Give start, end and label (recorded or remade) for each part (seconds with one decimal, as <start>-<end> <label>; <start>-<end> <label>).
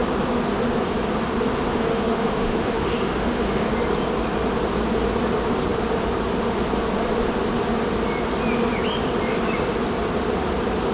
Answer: 0.0-1.9 recorded; 1.9-3.7 remade; 3.7-10.9 recorded